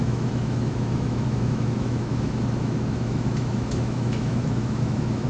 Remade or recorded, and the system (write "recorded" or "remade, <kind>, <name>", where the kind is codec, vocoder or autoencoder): remade, autoencoder, DAC-VAE